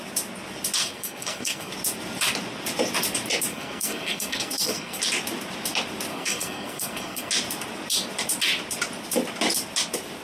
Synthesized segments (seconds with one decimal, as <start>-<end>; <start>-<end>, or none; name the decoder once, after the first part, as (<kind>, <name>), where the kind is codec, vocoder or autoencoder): 0.8-1.7 (codec, SNAC); 3.5-5.0; 6.1-7.3